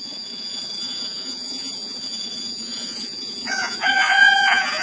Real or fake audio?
fake